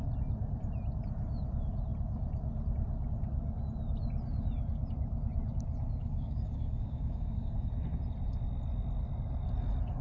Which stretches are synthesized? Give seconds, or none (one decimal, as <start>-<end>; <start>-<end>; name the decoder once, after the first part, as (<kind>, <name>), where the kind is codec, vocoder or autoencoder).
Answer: 6.0-7.7 (codec, DAC)